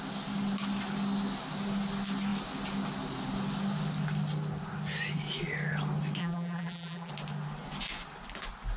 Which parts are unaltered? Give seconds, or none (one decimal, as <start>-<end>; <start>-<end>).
0.0-6.2; 7.1-8.8